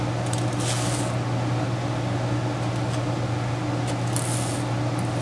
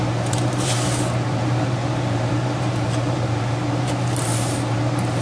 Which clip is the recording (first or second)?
first